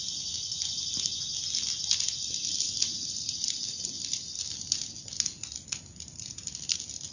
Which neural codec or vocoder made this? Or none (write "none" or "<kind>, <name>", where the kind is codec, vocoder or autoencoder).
none